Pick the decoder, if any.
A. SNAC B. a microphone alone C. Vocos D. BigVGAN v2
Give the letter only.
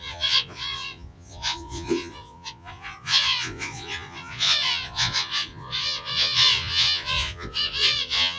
C